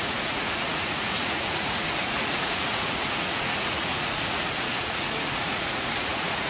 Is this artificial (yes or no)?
yes